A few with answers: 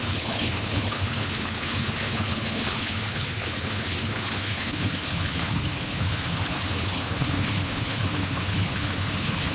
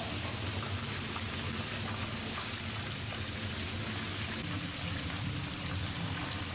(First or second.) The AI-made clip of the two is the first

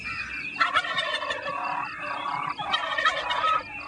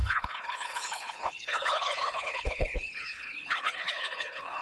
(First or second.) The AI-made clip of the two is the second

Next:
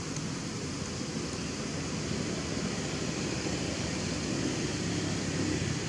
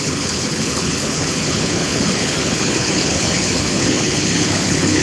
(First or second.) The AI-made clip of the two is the second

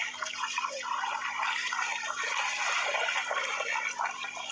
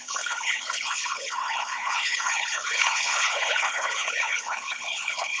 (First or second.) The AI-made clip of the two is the second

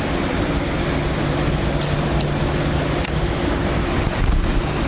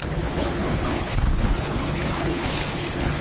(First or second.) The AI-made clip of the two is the second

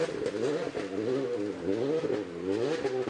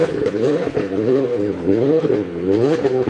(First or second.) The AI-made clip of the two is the second